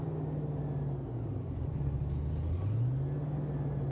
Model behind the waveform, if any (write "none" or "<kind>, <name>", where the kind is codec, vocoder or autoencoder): none